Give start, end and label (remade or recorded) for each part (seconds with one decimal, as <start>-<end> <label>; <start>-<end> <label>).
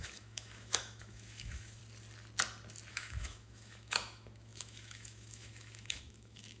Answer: 0.0-1.8 remade; 1.8-2.9 recorded; 2.9-6.6 remade